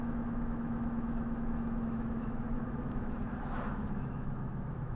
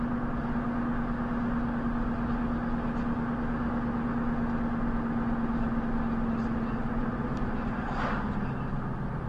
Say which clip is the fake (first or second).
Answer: first